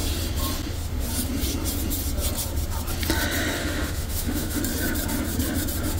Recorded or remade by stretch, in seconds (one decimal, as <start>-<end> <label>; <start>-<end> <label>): 0.0-3.6 recorded; 3.6-4.6 remade; 4.6-6.0 recorded